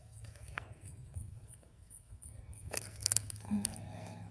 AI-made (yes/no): yes